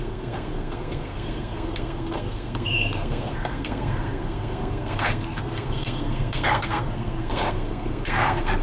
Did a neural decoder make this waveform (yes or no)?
yes